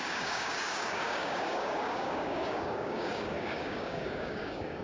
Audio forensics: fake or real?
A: fake